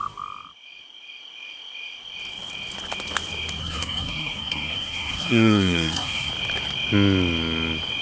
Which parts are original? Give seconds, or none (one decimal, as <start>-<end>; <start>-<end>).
0.0-3.6; 6.3-8.0